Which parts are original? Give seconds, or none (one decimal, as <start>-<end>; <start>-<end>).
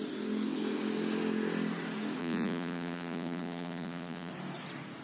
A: 0.0-2.2; 4.3-5.0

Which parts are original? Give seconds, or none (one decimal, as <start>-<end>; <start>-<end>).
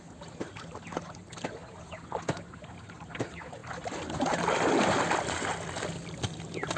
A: 0.0-6.8